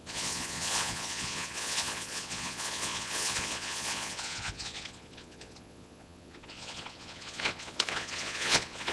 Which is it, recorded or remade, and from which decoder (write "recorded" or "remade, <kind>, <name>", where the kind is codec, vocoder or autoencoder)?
remade, vocoder, Vocos